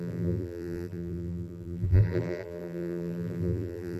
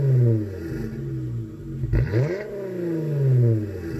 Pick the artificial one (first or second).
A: first